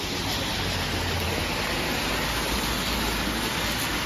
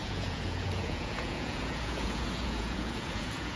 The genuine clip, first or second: first